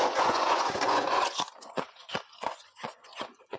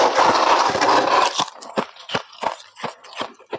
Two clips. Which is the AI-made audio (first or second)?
first